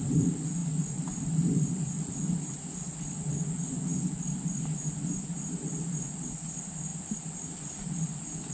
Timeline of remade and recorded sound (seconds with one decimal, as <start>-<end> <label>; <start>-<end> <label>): 0.0-8.5 recorded